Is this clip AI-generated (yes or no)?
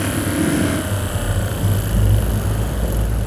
no